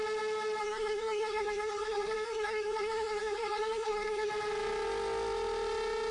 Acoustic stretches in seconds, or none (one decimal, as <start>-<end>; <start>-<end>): 0.0-0.6; 4.3-6.1